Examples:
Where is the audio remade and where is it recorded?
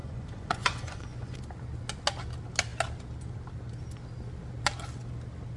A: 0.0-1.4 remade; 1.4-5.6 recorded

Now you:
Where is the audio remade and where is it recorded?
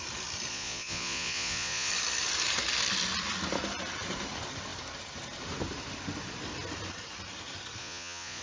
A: 0.0-0.5 recorded; 0.5-1.9 remade; 1.9-7.8 recorded; 7.8-8.4 remade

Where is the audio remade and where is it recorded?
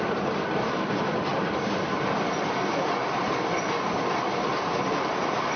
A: 0.0-5.6 recorded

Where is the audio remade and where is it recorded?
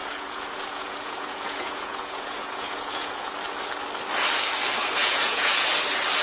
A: 0.0-3.3 remade; 3.3-5.0 recorded; 5.0-5.7 remade; 5.7-6.2 recorded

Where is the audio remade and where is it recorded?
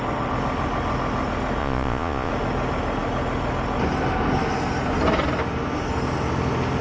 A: 0.0-1.6 recorded; 1.6-2.3 remade; 2.3-6.8 recorded